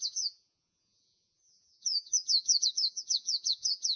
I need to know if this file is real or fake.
fake